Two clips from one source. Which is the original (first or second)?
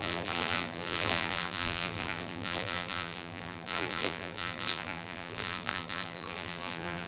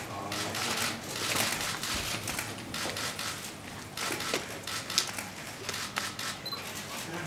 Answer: second